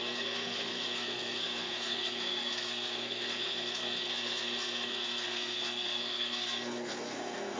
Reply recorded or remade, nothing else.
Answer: remade